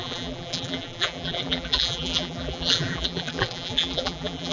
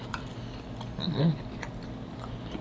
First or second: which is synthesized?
first